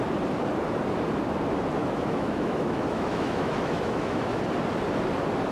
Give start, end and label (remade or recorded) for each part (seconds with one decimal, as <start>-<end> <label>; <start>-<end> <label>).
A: 0.0-1.8 recorded; 1.8-4.4 remade; 4.4-5.5 recorded